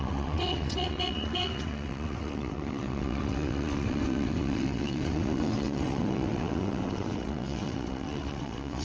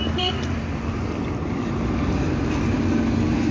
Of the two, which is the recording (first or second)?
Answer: second